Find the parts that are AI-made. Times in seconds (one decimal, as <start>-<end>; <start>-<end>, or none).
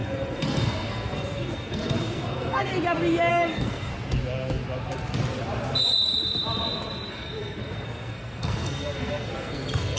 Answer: 0.0-2.7; 3.3-3.9; 7.1-10.0